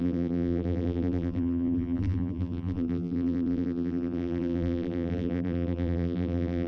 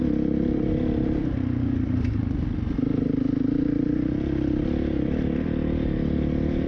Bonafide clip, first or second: second